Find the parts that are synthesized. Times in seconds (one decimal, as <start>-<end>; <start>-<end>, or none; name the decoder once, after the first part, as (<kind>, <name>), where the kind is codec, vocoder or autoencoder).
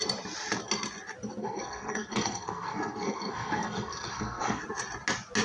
1.4-4.6 (codec, SNAC)